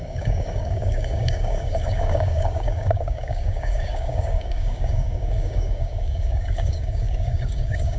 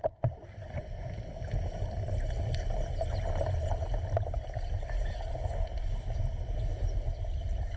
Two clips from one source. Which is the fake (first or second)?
first